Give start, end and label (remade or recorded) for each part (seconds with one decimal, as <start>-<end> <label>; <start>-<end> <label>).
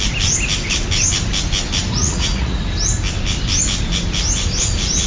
0.0-2.0 recorded; 2.0-2.6 remade; 2.6-5.1 recorded